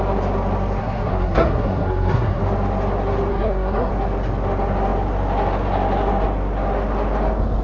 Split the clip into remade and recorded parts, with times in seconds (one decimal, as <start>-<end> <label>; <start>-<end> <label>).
0.0-0.8 recorded; 0.8-2.4 remade; 2.4-3.3 recorded; 3.3-3.9 remade; 3.9-7.6 recorded

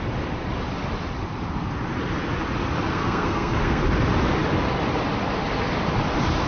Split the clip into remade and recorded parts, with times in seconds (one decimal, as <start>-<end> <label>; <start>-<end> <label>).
0.0-2.9 recorded; 2.9-3.8 remade; 3.8-6.5 recorded

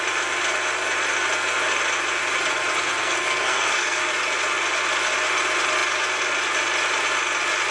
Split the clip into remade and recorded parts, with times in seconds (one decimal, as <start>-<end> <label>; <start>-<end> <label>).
0.0-3.0 recorded; 3.0-4.0 remade; 4.0-7.7 recorded